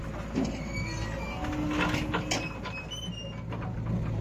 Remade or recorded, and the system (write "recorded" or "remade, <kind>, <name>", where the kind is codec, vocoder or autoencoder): recorded